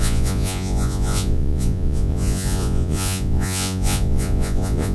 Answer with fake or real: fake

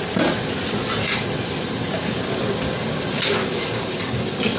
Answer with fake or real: real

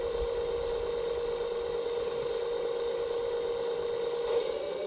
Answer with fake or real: real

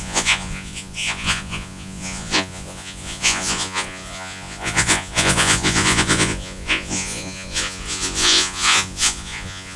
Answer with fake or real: fake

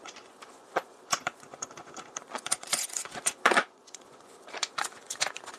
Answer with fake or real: fake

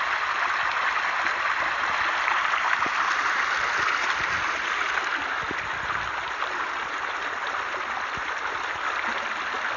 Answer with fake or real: real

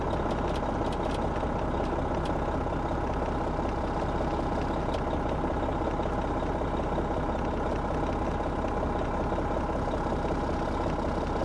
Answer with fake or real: real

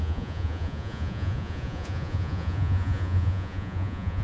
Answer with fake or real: fake